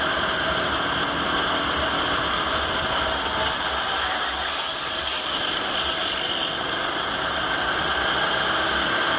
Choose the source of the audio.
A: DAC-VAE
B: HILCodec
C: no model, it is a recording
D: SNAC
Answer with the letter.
C